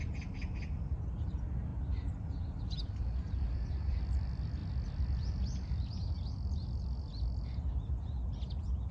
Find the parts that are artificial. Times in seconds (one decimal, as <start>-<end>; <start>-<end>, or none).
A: 1.7-4.0